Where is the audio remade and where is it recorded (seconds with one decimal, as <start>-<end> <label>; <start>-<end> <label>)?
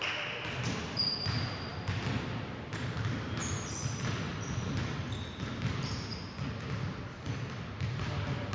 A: 0.0-8.5 recorded